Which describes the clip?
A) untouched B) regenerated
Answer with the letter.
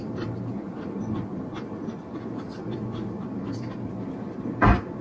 B